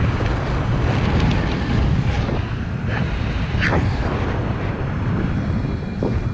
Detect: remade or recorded recorded